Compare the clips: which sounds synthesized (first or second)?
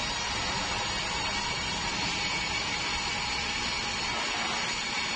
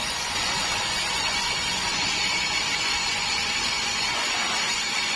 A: second